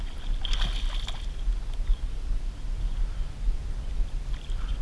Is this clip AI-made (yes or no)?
no